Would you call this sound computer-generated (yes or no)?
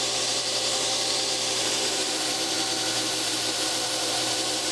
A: yes